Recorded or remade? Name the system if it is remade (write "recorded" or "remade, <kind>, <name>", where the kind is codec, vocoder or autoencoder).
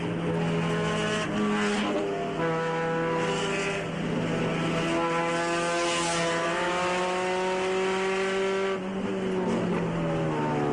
recorded